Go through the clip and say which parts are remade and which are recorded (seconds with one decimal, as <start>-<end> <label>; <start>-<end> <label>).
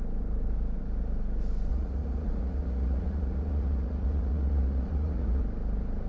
0.0-1.7 recorded; 1.7-5.4 remade; 5.4-6.1 recorded